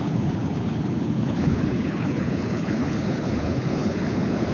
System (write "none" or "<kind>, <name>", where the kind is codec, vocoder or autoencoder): codec, HILCodec